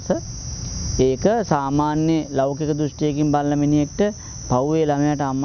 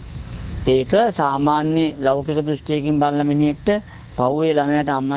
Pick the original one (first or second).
first